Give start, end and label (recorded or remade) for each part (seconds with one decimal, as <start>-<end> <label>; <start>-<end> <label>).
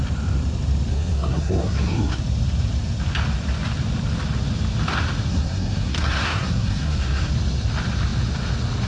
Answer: 0.0-0.9 recorded; 0.9-2.2 remade; 2.2-5.3 recorded; 5.3-7.3 remade; 7.3-8.9 recorded